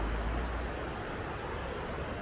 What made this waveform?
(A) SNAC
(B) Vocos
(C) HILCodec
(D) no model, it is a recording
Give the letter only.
D